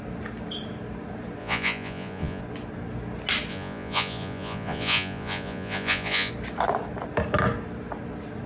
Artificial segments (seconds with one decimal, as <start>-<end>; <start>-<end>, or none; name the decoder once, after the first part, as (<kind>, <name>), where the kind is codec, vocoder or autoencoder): 1.4-2.4 (vocoder, Vocos); 3.5-6.3